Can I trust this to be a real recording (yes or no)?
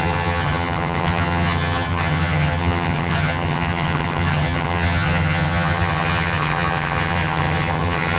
no